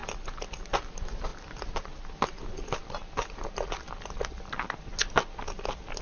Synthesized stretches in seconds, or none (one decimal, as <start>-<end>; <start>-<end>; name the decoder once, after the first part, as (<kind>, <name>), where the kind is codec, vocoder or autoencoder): none